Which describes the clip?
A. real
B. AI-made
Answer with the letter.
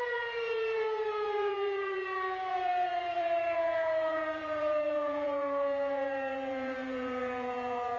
B